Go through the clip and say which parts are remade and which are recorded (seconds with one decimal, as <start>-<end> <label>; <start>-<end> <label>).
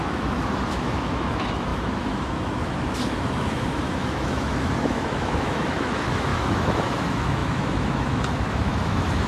0.0-9.3 remade